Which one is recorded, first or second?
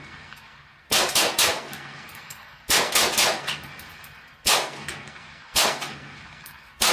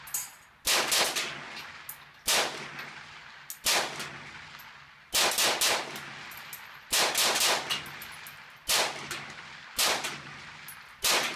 second